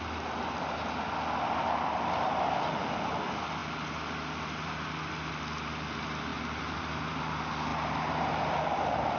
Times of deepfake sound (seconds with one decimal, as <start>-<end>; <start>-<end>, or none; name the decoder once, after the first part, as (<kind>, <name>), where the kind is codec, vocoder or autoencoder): 6.3-7.2 (vocoder, BigVGAN v2); 7.7-8.6